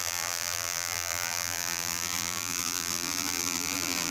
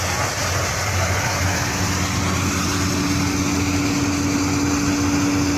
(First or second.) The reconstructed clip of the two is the first